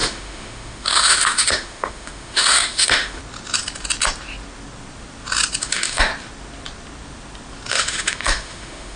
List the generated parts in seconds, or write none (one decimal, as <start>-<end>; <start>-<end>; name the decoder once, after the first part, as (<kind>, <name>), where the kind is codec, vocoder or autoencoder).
0.0-3.2 (autoencoder, DAC-VAE); 5.6-6.1; 7.7-9.0